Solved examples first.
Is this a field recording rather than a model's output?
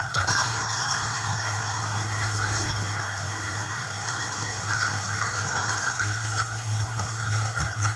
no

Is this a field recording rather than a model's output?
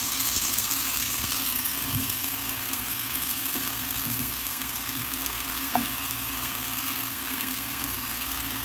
no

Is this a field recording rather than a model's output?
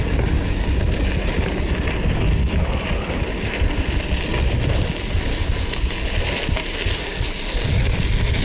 yes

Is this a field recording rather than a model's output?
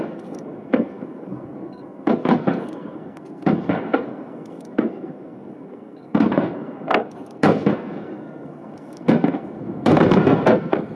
no